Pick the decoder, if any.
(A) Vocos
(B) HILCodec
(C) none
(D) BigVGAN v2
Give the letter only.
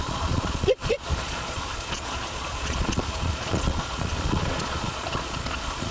A